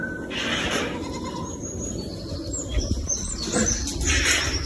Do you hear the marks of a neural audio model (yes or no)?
no